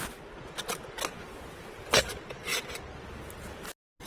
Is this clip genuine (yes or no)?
yes